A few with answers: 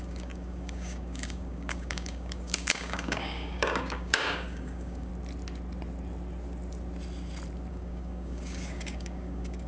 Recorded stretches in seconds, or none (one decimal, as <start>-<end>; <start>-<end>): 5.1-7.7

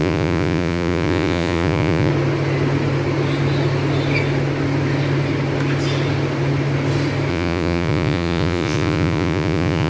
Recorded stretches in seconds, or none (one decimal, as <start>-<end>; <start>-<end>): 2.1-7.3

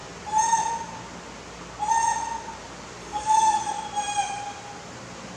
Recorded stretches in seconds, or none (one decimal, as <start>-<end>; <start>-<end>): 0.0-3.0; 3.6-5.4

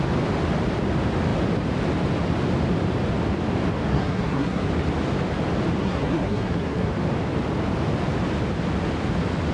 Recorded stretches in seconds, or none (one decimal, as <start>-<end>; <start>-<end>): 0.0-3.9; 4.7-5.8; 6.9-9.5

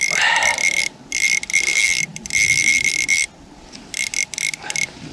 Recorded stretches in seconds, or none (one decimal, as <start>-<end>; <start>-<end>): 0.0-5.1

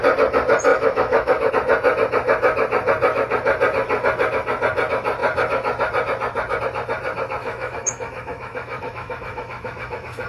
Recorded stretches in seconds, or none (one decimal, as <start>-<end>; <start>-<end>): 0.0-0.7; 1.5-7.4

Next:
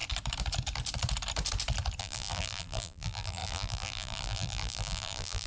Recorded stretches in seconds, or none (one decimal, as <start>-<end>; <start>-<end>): 0.0-2.0